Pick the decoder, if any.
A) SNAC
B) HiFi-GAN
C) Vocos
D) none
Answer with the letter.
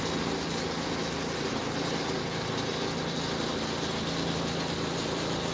D